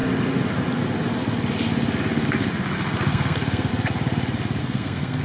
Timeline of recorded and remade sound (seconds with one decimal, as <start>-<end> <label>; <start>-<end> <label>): 0.0-3.1 recorded; 3.1-3.7 remade; 3.7-4.6 recorded; 4.6-5.2 remade